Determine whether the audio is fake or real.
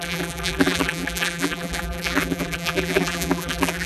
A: fake